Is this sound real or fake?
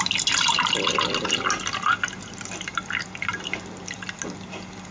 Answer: real